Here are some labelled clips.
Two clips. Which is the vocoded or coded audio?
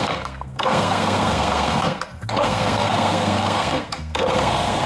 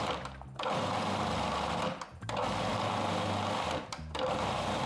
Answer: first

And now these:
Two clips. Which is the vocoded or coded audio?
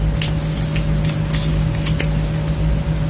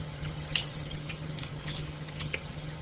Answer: second